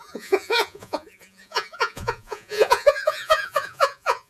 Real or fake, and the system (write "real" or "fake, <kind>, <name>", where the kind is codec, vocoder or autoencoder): fake, vocoder, Vocos